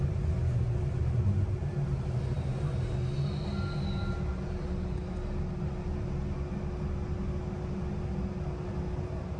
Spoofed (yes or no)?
no